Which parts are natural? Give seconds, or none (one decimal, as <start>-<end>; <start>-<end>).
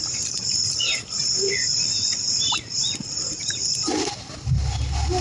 0.0-5.2